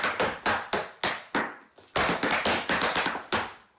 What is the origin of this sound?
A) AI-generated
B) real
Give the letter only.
B